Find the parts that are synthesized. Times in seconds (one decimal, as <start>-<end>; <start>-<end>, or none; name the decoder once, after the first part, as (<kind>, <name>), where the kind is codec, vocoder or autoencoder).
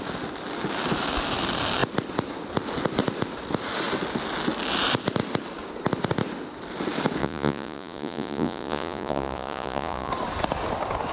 7.2-10.1 (vocoder, Vocos)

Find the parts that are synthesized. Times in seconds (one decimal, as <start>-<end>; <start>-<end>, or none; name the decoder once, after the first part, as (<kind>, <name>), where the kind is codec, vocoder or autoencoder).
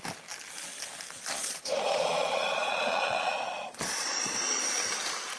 1.4-4.6 (vocoder, Vocos)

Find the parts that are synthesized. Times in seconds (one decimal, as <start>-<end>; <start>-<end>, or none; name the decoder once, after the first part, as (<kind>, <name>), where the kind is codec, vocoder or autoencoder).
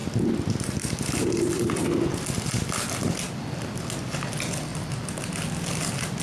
none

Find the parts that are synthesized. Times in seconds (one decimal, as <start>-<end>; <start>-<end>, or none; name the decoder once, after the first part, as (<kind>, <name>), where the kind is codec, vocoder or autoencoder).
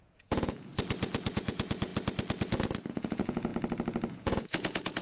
0.0-0.7 (vocoder, Vocos); 1.3-1.9; 2.9-3.5; 4.1-5.0